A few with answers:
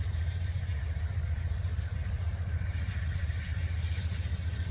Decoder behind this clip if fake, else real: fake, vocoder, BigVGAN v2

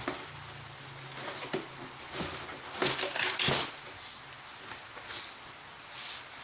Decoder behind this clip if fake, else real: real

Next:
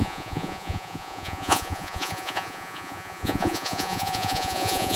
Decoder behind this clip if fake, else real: fake, vocoder, Vocos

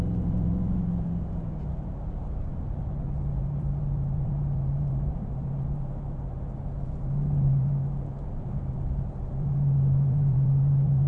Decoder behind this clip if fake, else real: fake, vocoder, BigVGAN v2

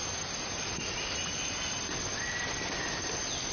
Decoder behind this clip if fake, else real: real